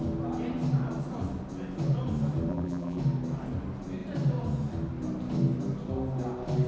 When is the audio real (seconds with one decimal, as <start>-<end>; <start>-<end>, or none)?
0.0-2.5; 3.0-6.7